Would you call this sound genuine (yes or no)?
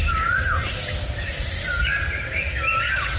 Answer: yes